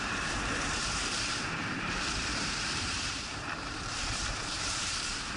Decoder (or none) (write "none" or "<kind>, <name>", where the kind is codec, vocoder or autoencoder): vocoder, BigVGAN v2